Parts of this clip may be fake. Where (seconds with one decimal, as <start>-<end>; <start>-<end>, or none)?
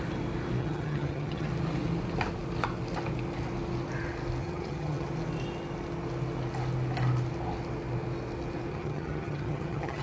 0.6-1.5; 4.4-5.1; 8.7-10.0